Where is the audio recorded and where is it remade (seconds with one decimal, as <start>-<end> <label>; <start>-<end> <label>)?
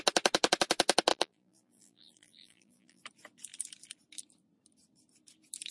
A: 0.0-1.1 recorded; 1.1-3.0 remade; 3.0-5.7 recorded